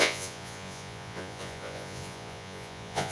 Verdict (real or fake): fake